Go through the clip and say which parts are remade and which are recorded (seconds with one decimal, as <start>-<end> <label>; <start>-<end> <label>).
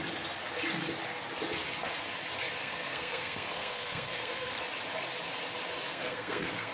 0.0-2.6 recorded; 2.6-4.6 remade; 4.6-5.9 recorded; 5.9-6.7 remade